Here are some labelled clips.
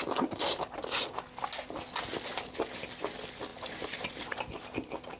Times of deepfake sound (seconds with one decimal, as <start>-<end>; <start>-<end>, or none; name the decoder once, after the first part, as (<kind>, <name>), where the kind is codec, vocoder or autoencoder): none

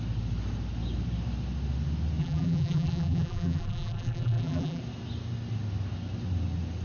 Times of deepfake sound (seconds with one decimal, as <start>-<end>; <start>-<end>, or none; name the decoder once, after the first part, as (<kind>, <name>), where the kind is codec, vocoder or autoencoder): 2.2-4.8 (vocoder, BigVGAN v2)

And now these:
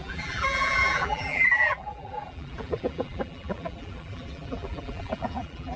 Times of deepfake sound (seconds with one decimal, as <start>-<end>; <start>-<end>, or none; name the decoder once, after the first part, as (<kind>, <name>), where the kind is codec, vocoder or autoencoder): 0.0-5.8 (vocoder, BigVGAN v2)

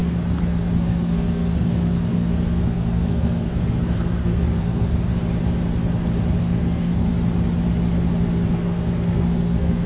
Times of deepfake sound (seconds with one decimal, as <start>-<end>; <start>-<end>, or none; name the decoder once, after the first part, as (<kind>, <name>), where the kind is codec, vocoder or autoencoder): 0.0-5.1 (codec, SNAC); 6.4-7.1; 8.5-9.9

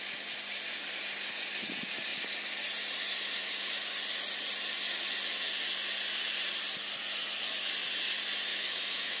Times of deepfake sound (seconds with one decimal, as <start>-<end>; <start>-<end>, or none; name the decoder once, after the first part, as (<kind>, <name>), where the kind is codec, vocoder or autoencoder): 8.5-9.2 (autoencoder, DAC-VAE)

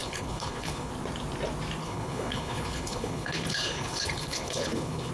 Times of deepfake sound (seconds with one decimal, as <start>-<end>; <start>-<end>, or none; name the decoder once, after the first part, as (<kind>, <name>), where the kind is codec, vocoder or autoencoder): 0.0-0.9 (codec, HILCodec); 1.8-5.1